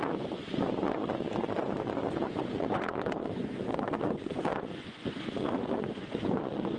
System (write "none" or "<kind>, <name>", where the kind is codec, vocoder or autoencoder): vocoder, Vocos